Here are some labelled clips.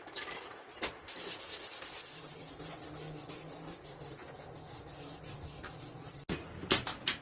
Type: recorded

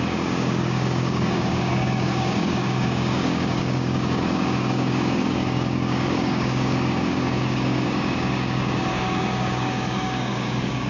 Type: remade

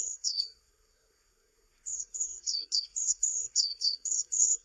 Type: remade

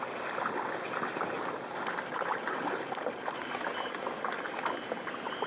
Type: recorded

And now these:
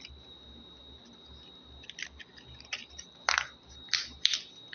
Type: remade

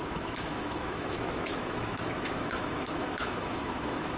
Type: remade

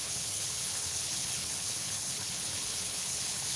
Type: remade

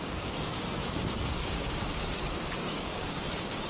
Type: remade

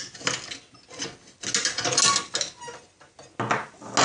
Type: recorded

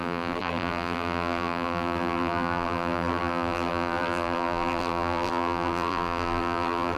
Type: remade